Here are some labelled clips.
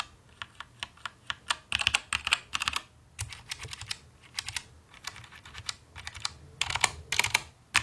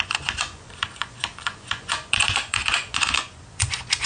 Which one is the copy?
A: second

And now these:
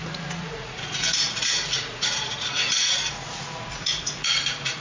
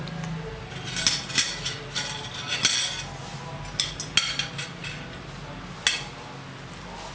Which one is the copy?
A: first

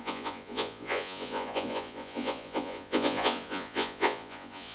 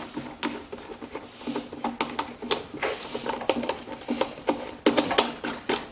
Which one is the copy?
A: first